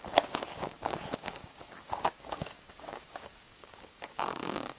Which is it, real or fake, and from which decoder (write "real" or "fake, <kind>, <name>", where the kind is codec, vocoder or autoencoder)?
fake, codec, DAC